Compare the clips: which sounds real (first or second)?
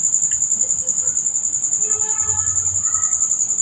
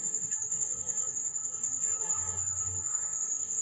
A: first